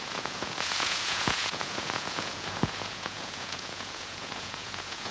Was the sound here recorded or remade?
remade